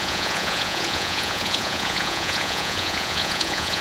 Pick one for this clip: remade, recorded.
remade